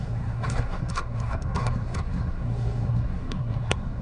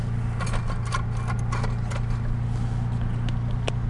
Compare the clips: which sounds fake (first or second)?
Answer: first